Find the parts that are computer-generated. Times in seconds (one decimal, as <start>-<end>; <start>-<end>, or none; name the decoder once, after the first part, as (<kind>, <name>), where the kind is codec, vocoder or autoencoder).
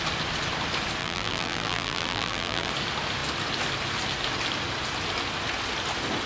1.0-2.7 (vocoder, BigVGAN v2)